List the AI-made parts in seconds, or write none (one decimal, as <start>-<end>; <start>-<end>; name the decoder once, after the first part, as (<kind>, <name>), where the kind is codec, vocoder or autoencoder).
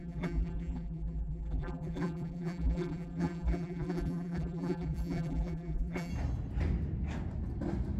0.0-6.1 (vocoder, BigVGAN v2)